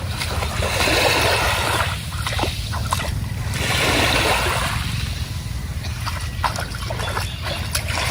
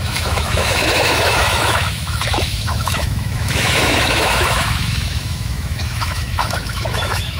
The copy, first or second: second